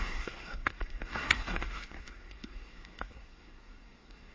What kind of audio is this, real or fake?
fake